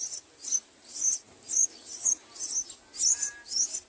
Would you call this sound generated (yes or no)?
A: no